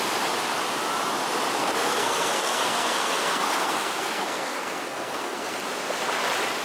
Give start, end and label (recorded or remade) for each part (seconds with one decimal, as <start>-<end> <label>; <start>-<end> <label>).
0.0-1.6 recorded; 1.6-5.6 remade; 5.6-6.6 recorded